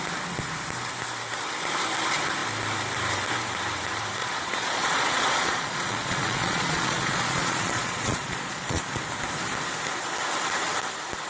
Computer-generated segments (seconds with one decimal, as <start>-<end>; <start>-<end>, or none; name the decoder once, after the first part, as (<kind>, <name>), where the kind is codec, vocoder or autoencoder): 4.2-9.0 (vocoder, Vocos)